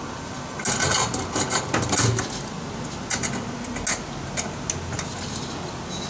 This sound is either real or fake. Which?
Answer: real